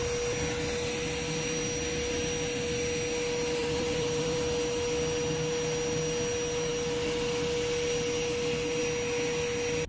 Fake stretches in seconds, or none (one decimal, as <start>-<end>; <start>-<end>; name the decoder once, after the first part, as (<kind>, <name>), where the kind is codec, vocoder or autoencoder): 3.6-4.4 (vocoder, BigVGAN v2)